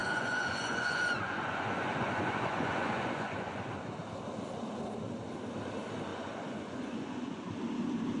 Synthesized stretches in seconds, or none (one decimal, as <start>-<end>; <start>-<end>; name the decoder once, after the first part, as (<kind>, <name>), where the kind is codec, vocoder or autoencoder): 0.0-3.6 (vocoder, Vocos); 6.1-7.5